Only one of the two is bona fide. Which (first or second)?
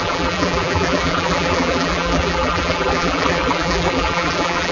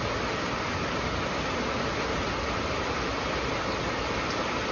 second